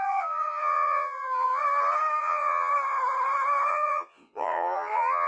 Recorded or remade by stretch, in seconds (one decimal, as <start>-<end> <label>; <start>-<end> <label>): 0.0-1.6 remade; 1.6-2.2 recorded; 2.2-2.7 remade; 2.7-3.7 recorded; 3.7-5.3 remade